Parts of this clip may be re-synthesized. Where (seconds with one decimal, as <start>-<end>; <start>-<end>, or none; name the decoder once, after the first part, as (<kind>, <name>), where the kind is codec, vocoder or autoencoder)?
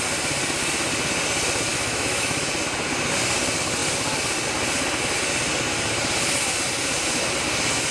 1.7-2.4 (autoencoder, DAC-VAE)